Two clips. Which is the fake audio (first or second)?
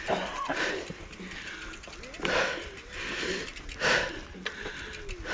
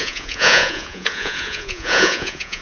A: second